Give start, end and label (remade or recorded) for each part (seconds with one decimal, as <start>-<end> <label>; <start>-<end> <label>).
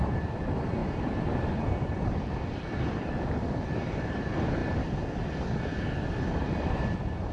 0.0-0.8 remade; 0.8-3.9 recorded; 3.9-4.6 remade; 4.6-5.9 recorded; 5.9-7.3 remade